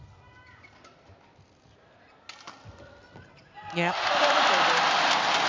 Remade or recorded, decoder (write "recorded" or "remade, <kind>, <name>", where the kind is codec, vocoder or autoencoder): recorded